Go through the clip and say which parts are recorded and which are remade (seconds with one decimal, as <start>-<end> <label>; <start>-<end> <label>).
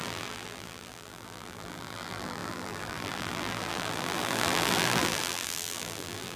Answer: 0.0-6.4 remade